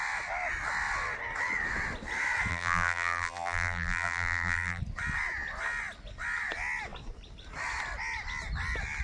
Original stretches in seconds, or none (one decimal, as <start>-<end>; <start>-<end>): 0.0-2.5; 4.8-9.0